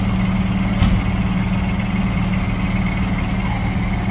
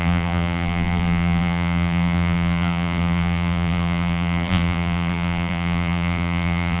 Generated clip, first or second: second